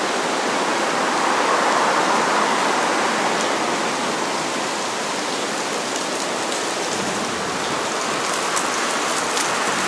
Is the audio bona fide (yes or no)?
yes